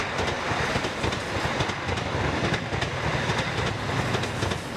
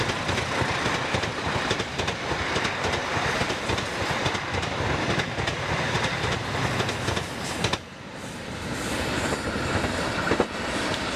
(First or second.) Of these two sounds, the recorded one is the first